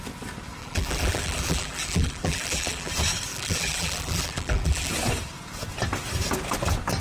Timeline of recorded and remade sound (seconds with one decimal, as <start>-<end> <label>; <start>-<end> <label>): 0.0-0.6 recorded; 0.6-2.9 remade; 2.9-3.3 recorded; 3.3-4.9 remade; 4.9-7.0 recorded